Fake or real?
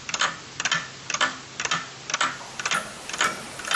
real